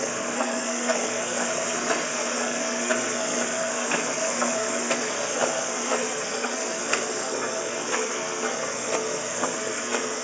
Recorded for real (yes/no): no